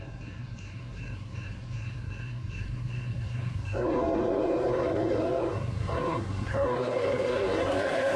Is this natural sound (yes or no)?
no